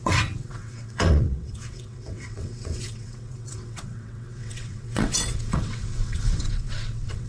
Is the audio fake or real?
fake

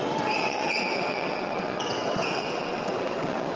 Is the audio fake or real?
fake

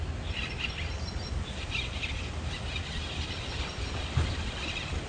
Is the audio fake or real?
real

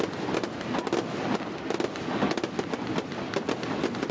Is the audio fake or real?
real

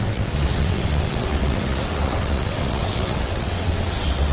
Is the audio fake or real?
fake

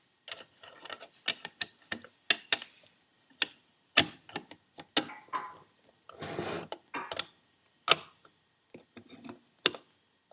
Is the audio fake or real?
real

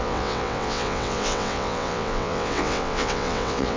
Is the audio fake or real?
fake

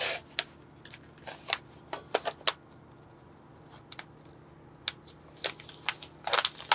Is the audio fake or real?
real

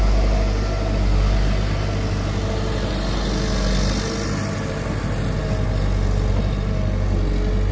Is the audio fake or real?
real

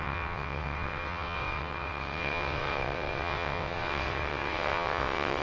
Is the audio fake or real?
fake